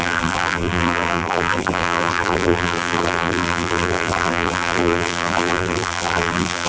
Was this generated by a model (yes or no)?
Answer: yes